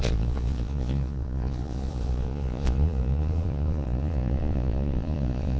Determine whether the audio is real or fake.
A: fake